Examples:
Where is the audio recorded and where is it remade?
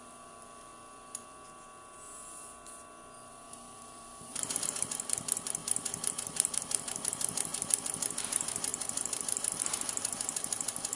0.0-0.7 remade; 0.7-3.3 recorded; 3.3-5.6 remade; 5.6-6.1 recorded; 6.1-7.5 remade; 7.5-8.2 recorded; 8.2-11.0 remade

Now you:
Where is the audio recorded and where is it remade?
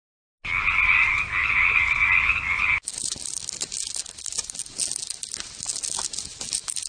0.0-6.9 recorded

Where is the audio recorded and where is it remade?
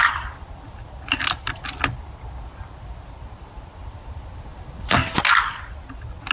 0.0-4.5 recorded; 4.5-5.1 remade; 5.1-6.3 recorded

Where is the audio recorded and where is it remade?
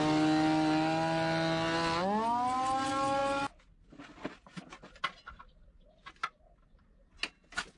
0.0-7.8 recorded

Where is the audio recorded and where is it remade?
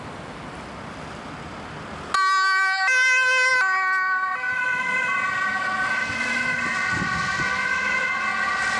0.0-8.8 recorded